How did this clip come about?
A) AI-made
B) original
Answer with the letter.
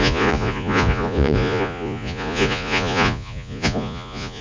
A